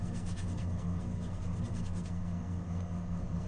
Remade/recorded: remade